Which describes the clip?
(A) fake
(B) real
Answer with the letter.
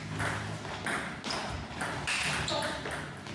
B